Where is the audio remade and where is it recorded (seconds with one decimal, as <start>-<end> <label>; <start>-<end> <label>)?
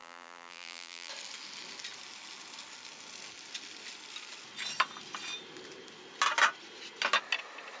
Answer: 0.0-1.1 remade; 1.1-7.8 recorded